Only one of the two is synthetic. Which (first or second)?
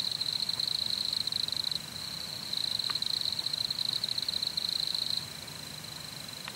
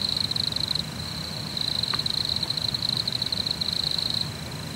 first